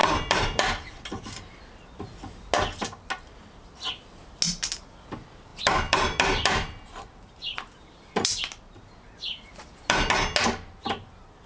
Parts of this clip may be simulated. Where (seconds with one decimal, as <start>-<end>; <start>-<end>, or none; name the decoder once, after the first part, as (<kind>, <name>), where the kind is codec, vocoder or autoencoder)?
0.0-1.0 (vocoder, BigVGAN v2); 5.5-10.1